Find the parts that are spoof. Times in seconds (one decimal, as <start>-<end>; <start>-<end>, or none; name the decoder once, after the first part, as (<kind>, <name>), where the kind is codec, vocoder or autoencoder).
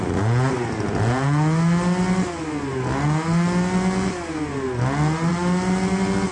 none